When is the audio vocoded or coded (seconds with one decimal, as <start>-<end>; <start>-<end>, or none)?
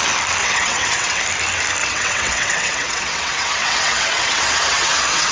0.4-1.2; 1.8-5.3